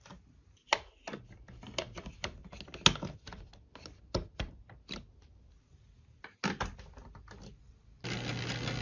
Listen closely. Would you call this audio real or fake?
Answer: real